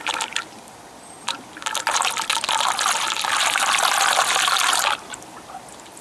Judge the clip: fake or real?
real